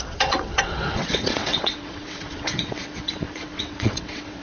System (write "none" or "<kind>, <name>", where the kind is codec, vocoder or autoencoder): vocoder, WaveNeXt